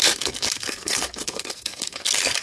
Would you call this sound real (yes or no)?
no